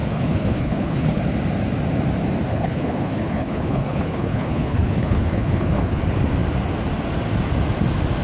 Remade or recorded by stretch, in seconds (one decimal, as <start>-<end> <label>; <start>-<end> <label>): 0.0-1.2 remade; 1.2-2.5 recorded; 2.5-6.0 remade; 6.0-8.2 recorded